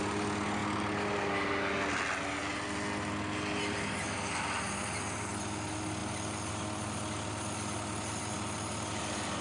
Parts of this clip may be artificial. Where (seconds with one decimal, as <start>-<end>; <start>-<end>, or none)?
none